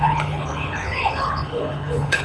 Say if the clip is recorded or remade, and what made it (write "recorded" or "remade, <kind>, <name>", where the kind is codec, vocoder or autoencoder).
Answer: remade, codec, HILCodec